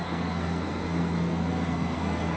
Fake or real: fake